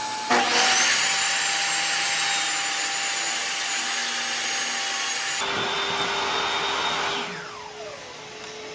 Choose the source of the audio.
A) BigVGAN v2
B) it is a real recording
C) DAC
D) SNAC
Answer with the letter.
B